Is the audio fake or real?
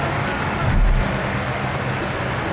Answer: real